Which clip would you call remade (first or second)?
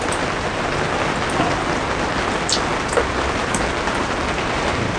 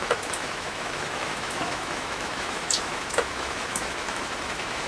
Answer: second